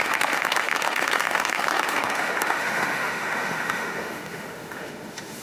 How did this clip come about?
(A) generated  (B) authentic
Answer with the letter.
A